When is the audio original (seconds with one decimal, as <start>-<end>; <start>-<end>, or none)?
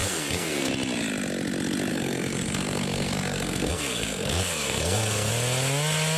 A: 0.7-1.9; 5.3-6.2